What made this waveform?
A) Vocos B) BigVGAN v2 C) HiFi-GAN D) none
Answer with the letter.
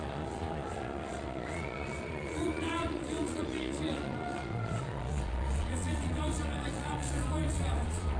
A